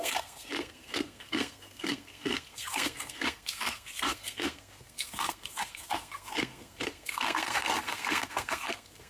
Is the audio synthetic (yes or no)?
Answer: yes